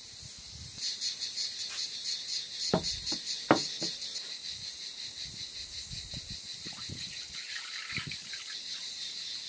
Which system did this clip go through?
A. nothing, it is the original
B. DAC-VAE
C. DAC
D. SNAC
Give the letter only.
A